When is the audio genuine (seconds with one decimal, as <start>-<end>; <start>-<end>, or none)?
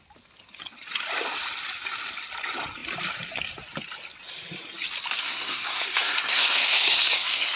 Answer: 0.0-5.2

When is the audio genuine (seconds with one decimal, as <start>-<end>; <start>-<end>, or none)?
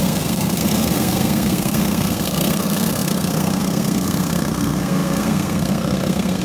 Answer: none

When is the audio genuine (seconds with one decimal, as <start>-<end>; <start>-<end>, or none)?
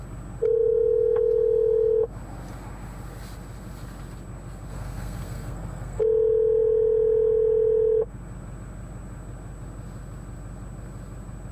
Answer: 0.0-4.7; 6.0-11.5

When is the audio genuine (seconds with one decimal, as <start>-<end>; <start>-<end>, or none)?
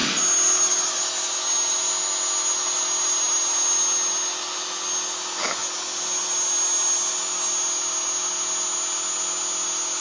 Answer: 0.0-10.0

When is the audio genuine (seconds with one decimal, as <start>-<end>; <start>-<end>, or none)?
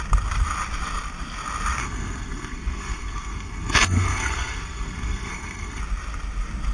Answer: 0.0-1.8; 5.8-6.7